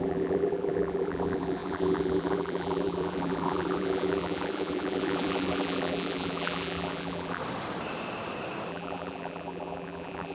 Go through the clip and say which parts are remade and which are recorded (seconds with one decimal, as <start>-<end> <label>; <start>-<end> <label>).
0.0-7.4 remade; 7.4-8.7 recorded; 8.7-10.3 remade